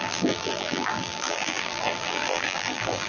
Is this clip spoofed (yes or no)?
yes